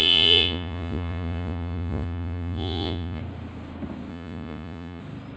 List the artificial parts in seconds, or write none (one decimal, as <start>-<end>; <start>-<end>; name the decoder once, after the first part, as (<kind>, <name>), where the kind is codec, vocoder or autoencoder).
0.0-3.2 (vocoder, Vocos); 4.1-5.0